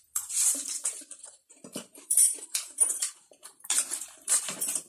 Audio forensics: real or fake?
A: fake